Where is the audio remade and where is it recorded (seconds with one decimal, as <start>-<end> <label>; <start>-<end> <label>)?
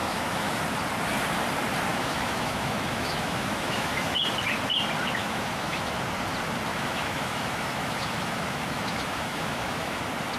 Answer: 0.0-0.6 remade; 0.6-1.9 recorded; 1.9-4.2 remade; 4.2-5.2 recorded; 5.2-6.0 remade; 6.0-6.7 recorded; 6.7-10.0 remade; 10.0-10.4 recorded